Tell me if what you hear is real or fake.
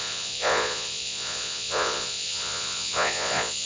fake